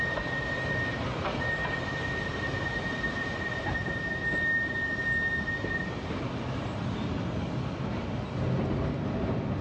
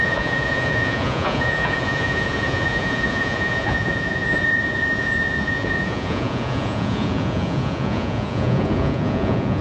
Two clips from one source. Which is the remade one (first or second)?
second